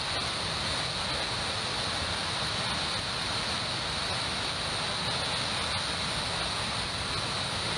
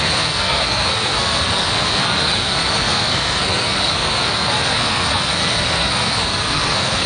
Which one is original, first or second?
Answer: first